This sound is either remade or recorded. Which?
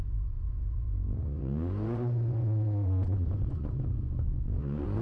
remade